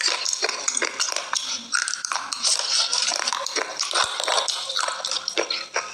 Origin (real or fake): fake